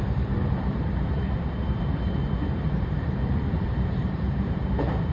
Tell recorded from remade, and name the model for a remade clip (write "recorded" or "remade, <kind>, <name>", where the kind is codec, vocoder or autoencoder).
remade, vocoder, BigVGAN v2